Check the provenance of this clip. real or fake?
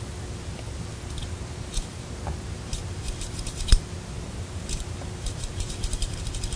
real